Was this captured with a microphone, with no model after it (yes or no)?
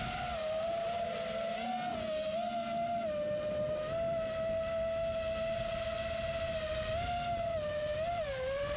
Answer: yes